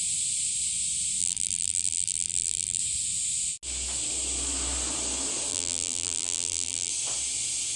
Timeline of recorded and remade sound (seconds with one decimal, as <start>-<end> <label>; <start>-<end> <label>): 0.0-1.2 recorded; 1.2-2.8 remade; 2.8-5.5 recorded; 5.5-6.9 remade; 6.9-7.8 recorded